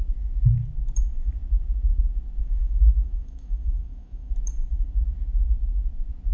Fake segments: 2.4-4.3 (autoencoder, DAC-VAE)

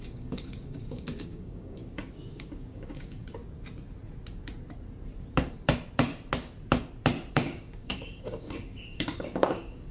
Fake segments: 0.0-3.4 (codec, DAC); 7.3-9.9

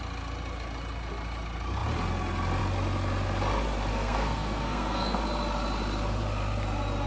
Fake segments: 3.9-5.2 (codec, SNAC)

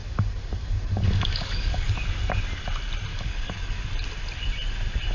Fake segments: 0.0-1.9 (codec, DAC); 3.1-3.8

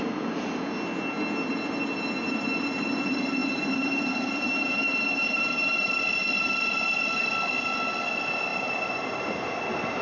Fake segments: 3.4-5.9 (vocoder, BigVGAN v2); 8.5-10.0

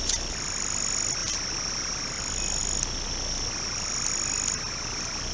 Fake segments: none

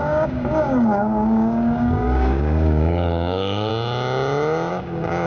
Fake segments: 0.0-3.7 (codec, DAC); 4.7-5.3

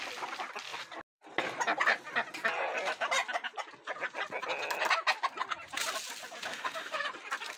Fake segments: 6.5-7.0 (autoencoder, DAC-VAE)